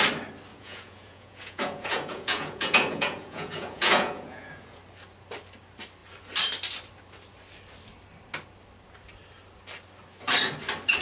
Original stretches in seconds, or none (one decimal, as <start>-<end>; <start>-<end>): 0.0-0.5; 4.8-11.0